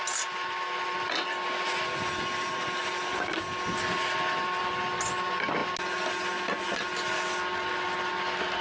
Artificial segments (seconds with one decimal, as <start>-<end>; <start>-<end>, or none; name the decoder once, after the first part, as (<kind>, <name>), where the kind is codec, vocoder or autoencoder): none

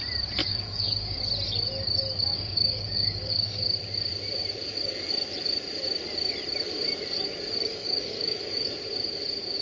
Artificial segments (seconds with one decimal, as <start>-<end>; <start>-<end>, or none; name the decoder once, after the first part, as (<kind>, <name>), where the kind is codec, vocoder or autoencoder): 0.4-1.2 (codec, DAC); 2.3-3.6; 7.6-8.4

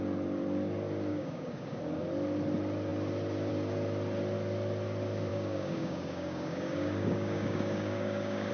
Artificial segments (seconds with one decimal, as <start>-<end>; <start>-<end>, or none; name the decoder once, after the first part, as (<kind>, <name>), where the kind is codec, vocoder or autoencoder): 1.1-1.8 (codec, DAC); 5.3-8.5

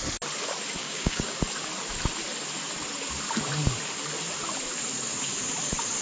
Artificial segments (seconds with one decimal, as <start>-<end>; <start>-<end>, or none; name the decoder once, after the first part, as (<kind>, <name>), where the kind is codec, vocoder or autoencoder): 0.8-1.4 (codec, DAC)

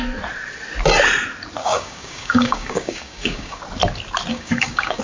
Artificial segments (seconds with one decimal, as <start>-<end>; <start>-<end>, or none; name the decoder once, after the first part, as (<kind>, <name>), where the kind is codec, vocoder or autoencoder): 1.6-3.6 (codec, DAC); 4.3-5.0

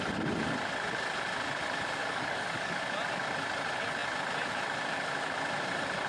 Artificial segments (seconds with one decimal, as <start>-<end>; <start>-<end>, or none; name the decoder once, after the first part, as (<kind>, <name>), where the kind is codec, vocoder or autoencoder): 2.0-2.8 (codec, DAC)

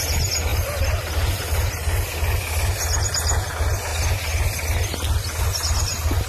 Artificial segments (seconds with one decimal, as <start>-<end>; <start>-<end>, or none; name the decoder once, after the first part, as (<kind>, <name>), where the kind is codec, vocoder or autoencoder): none

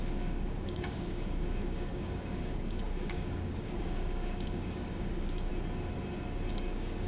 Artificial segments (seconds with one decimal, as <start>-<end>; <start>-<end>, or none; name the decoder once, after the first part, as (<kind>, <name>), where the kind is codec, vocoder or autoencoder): 0.0-5.5 (codec, DAC); 6.5-7.1